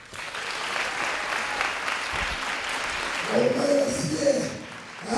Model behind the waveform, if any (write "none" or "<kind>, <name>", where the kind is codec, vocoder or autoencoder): none